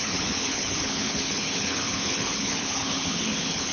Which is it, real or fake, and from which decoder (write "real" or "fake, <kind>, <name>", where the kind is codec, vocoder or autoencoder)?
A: fake, codec, HILCodec